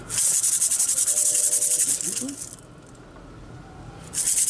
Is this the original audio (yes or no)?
yes